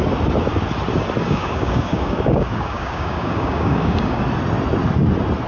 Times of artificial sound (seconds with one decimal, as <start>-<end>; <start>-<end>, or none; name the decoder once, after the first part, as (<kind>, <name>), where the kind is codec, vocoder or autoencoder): 1.2-4.2 (codec, DAC)